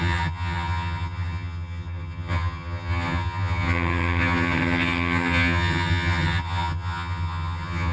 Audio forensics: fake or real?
fake